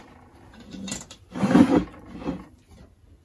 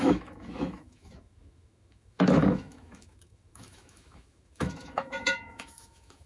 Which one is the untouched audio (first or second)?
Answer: first